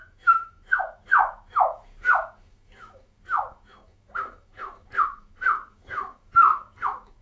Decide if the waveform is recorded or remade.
remade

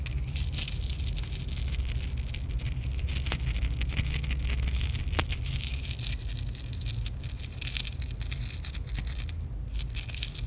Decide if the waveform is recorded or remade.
recorded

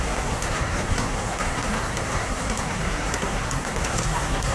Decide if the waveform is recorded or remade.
remade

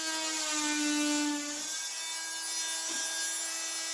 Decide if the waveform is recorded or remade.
recorded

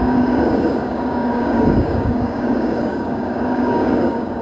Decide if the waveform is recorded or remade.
remade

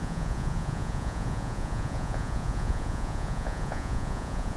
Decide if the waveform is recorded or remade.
remade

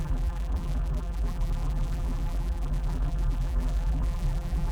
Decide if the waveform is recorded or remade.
remade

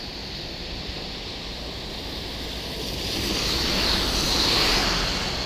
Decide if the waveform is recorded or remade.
recorded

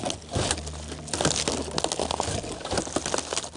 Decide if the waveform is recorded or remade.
recorded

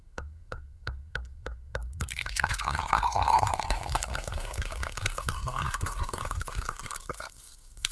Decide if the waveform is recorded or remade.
remade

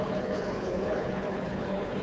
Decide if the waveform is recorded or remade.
remade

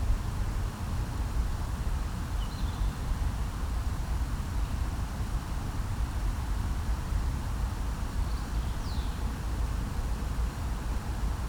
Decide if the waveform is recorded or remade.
remade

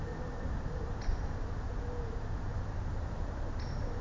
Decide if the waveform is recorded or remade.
recorded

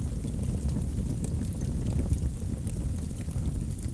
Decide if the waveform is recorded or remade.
recorded